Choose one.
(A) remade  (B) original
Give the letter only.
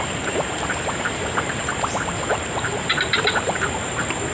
A